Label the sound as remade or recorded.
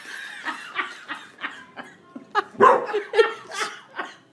recorded